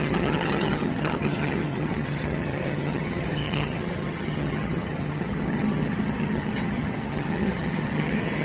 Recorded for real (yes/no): no